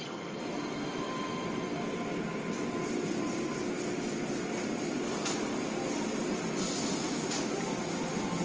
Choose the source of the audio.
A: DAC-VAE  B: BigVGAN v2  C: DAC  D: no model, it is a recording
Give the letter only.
D